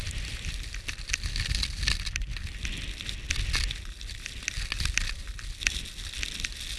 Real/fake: real